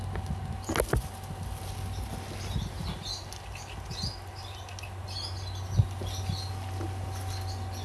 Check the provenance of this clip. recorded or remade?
recorded